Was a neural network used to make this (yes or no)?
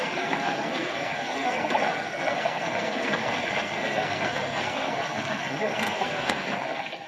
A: yes